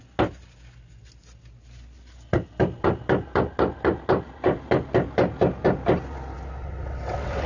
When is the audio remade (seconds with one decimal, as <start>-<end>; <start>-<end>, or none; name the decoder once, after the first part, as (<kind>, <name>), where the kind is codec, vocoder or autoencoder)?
6.6-7.5 (vocoder, WaveNeXt)